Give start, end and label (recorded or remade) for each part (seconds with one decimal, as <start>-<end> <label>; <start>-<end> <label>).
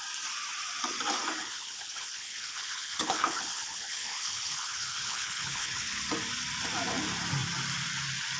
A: 0.0-1.4 recorded; 1.4-6.0 remade; 6.0-8.4 recorded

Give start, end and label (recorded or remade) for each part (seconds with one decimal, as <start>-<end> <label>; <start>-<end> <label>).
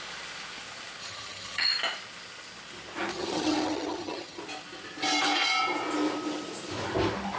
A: 0.0-1.0 recorded; 1.0-1.7 remade; 1.7-3.1 recorded; 3.1-4.4 remade; 4.4-7.4 recorded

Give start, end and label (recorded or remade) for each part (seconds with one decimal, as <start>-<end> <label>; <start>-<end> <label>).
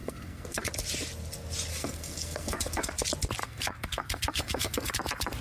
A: 0.0-0.7 remade; 0.7-1.7 recorded; 1.7-2.9 remade; 2.9-3.4 recorded; 3.4-4.9 remade; 4.9-5.4 recorded